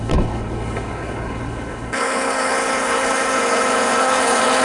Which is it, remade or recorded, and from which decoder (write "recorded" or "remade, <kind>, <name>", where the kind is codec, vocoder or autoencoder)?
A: remade, codec, HILCodec